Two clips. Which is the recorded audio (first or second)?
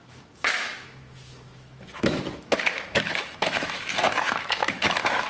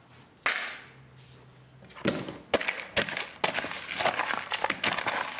second